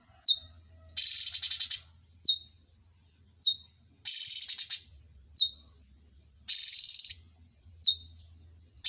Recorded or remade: recorded